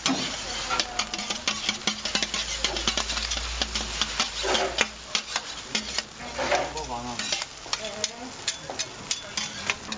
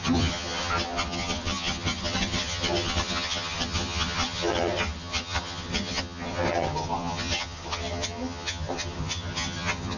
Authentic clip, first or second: first